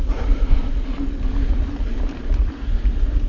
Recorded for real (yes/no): yes